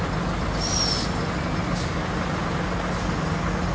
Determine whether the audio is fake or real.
real